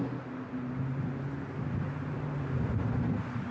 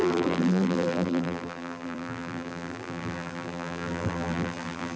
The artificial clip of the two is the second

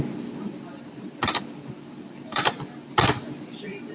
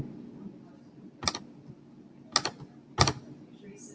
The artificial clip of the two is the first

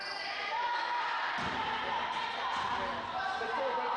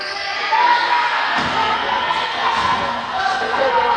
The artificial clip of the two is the second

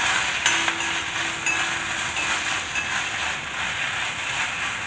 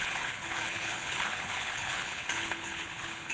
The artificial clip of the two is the second